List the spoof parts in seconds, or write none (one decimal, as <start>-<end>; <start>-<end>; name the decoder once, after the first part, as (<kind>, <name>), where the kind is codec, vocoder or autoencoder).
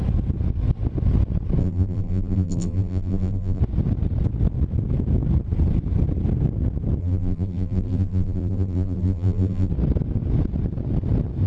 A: 1.6-3.6 (vocoder, BigVGAN v2); 7.0-9.7